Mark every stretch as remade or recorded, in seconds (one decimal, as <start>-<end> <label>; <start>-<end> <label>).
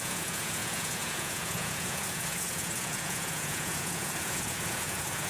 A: 0.0-5.3 remade